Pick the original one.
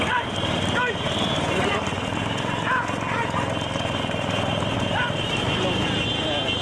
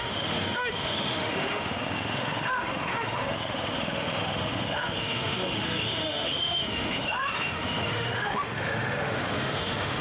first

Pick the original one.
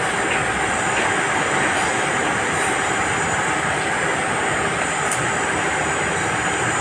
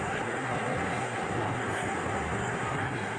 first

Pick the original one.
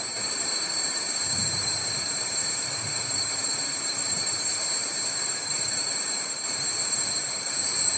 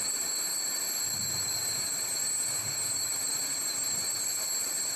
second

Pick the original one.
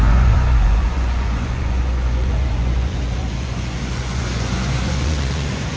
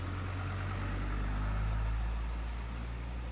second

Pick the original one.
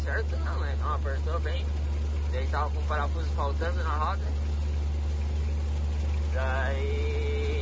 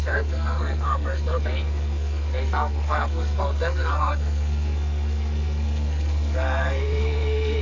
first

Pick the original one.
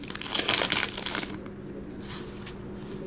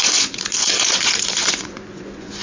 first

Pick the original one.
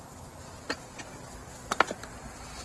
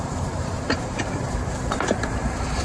first